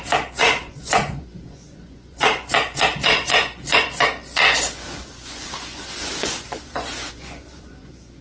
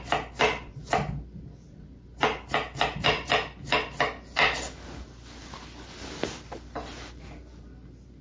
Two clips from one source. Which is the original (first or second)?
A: second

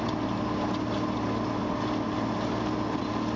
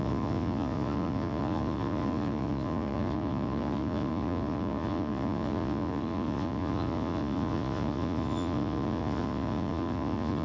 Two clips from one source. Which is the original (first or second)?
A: first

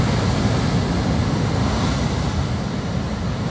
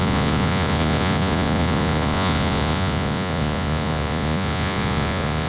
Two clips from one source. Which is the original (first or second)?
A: first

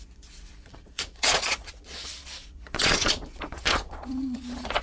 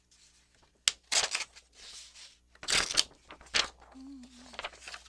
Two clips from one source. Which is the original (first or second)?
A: second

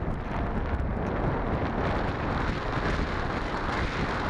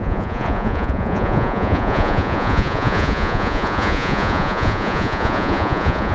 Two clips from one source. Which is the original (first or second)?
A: first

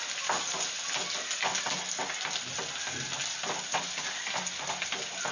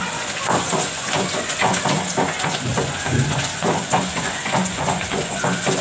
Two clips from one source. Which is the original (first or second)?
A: first